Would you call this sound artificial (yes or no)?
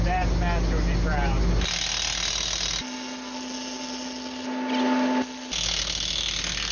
no